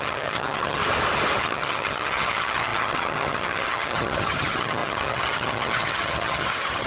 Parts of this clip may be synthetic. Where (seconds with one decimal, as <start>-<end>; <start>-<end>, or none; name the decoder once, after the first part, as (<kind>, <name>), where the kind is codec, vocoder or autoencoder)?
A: 0.0-0.8 (vocoder, HiFi-GAN); 1.4-6.9